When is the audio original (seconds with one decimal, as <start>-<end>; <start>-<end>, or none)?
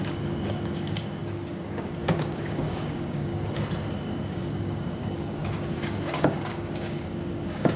3.3-4.2